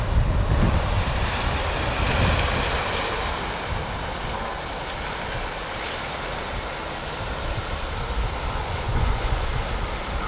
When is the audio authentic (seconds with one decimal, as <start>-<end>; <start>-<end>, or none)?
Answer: 0.0-8.6; 9.5-10.3